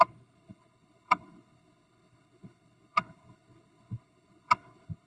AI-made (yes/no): yes